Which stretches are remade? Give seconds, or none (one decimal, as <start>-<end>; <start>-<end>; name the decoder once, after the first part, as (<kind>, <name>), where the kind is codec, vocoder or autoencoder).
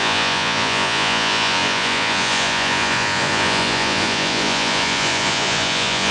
0.0-6.1 (vocoder, Vocos)